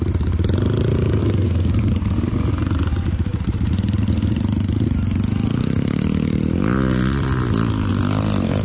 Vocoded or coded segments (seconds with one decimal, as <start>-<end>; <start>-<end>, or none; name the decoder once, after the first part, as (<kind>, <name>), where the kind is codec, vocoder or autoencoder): 1.2-1.9 (codec, SNAC)